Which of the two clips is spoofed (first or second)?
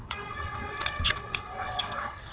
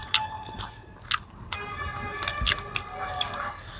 first